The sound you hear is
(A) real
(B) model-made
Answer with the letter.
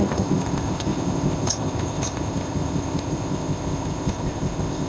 B